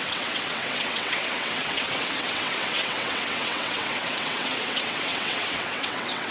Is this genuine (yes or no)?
no